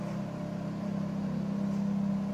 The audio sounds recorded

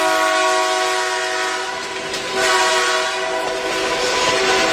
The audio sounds recorded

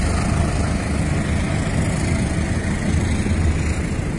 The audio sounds recorded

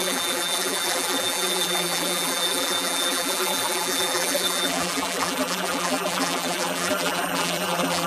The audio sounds remade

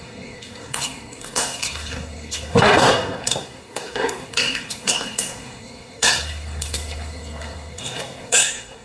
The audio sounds remade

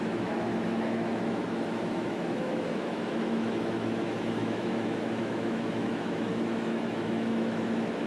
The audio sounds remade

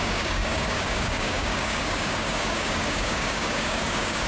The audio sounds remade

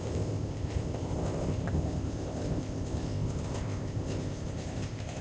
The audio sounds remade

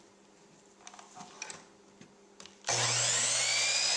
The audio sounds recorded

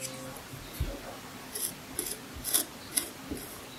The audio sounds recorded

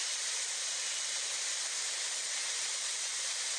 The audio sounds recorded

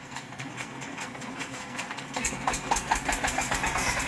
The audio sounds remade